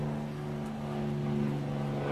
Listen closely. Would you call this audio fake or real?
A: real